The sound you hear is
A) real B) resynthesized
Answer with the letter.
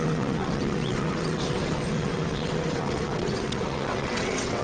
B